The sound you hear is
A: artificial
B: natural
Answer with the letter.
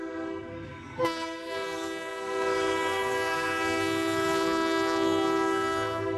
A